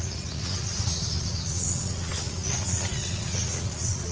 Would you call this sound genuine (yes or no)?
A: no